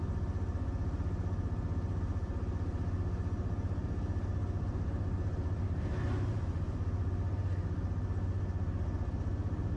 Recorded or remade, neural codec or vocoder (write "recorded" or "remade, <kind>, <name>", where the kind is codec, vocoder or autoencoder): recorded